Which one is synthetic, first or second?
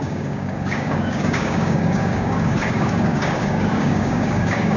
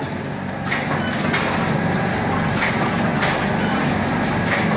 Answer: first